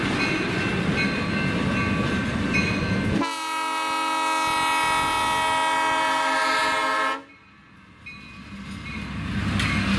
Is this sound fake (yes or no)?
no